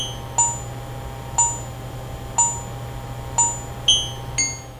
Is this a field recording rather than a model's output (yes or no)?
yes